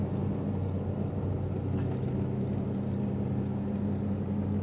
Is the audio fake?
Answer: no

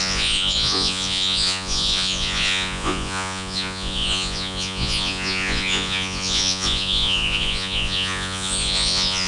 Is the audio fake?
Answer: yes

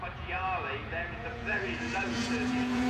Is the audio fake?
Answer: yes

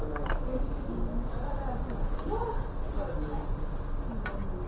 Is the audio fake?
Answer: no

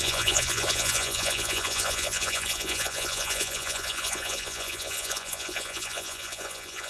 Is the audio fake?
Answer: yes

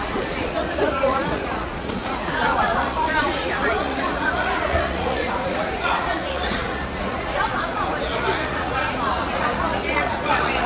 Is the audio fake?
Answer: yes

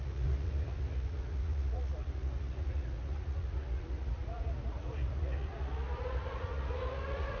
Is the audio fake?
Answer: yes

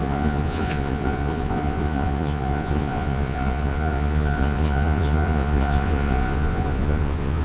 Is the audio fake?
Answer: yes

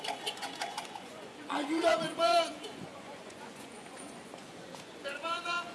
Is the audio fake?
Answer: yes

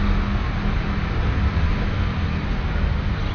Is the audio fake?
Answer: no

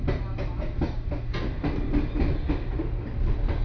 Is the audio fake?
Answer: no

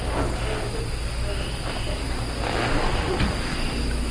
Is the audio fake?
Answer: no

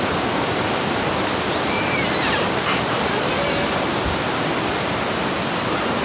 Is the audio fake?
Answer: no